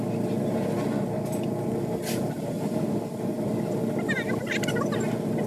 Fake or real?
real